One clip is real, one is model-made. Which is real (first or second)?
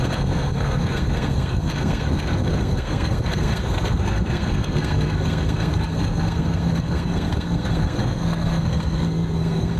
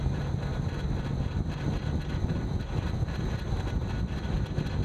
second